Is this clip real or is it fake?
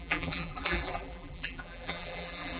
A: fake